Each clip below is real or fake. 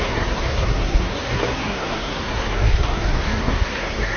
fake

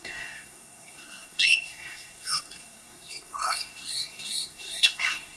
fake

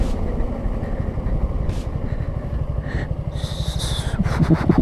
real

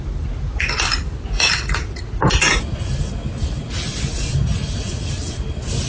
real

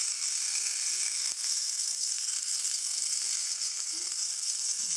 fake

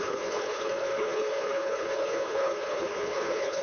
fake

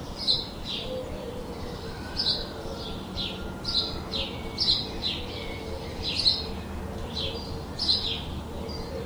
real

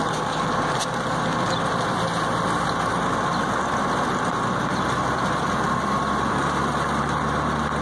real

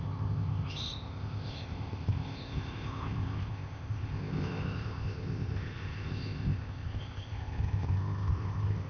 fake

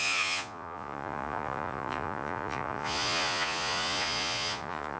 fake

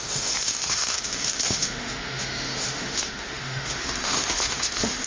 fake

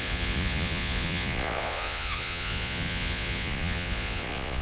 fake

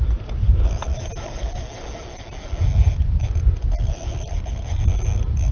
real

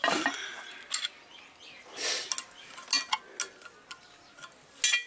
real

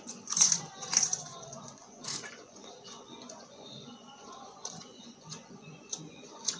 fake